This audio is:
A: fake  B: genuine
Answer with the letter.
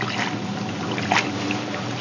B